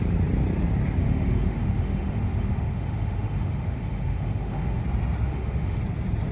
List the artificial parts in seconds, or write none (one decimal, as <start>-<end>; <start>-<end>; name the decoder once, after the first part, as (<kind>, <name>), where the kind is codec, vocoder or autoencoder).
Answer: 1.0-4.8 (autoencoder, DAC-VAE); 5.3-5.8